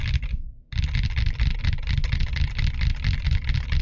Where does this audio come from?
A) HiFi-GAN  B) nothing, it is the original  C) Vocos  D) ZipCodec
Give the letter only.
B